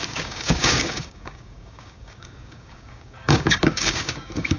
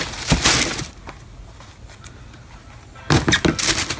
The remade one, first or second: first